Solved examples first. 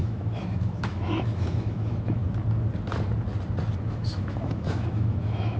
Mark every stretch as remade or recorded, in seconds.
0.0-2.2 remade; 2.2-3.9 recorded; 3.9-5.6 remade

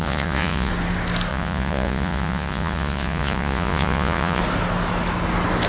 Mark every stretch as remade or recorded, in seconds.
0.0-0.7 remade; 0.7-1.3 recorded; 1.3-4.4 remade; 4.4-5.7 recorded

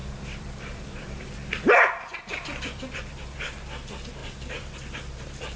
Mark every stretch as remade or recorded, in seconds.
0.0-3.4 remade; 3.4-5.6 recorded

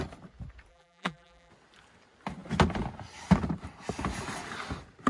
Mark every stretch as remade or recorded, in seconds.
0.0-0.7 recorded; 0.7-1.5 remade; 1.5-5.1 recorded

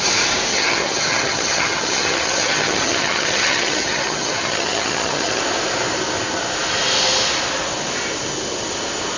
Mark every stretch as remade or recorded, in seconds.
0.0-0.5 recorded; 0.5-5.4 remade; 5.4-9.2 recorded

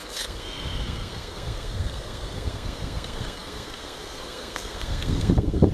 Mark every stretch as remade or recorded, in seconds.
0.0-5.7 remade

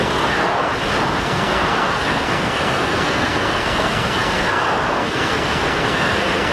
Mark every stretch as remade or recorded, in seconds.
0.0-0.7 remade; 0.7-1.2 recorded; 1.2-6.5 remade